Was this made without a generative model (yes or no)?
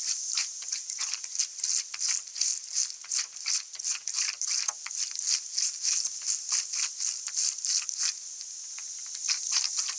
yes